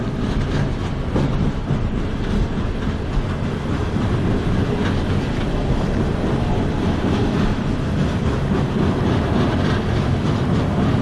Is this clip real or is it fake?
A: real